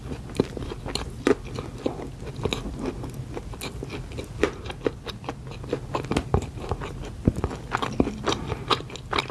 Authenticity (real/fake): real